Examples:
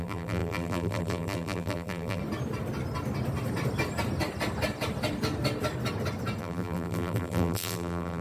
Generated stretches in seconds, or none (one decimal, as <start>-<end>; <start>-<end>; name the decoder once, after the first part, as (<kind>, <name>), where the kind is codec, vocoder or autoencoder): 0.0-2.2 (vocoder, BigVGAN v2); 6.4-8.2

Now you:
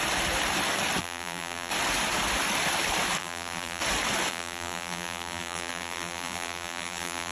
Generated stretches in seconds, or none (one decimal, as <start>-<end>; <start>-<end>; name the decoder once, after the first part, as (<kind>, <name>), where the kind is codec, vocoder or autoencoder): 1.0-1.7 (vocoder, BigVGAN v2); 3.2-3.8; 4.3-7.3

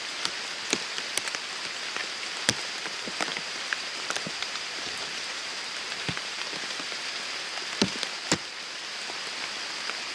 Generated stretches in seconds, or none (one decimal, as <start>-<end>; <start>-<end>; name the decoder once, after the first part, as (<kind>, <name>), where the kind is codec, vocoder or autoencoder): 3.3-6.7 (vocoder, BigVGAN v2)

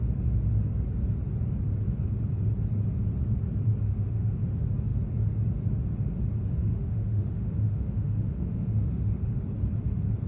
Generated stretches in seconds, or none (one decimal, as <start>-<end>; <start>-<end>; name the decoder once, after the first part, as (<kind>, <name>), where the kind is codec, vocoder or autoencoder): 3.9-4.5 (autoencoder, DAC-VAE); 6.6-9.4

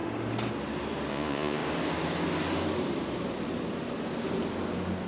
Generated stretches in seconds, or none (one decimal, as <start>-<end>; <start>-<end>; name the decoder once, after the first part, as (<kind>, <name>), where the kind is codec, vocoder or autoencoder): 1.1-1.6 (vocoder, Vocos)